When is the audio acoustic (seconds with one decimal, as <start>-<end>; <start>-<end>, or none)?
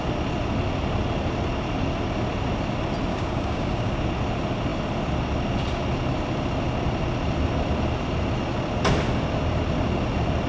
0.0-3.1; 4.0-10.5